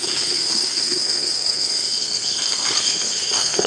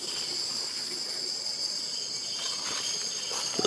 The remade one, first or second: first